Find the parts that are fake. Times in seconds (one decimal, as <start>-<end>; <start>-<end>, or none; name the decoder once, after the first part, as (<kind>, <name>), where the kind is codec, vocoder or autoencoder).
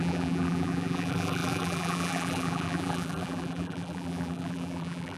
0.0-5.2 (vocoder, BigVGAN v2)